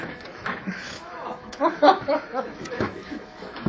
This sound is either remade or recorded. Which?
remade